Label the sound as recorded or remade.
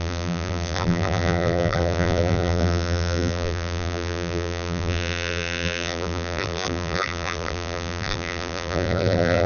remade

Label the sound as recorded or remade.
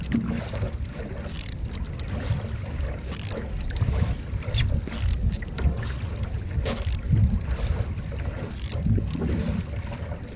recorded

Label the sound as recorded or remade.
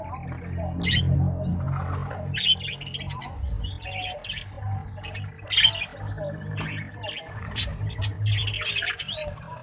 recorded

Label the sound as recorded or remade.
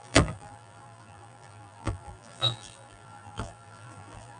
remade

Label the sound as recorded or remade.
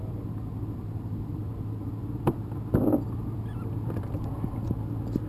recorded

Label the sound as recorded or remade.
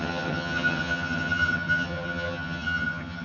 remade